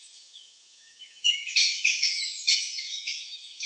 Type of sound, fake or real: fake